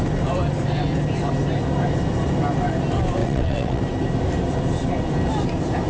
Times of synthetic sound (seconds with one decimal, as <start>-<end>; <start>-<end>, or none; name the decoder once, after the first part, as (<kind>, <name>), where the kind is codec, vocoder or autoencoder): 3.2-3.8 (vocoder, WaveNeXt)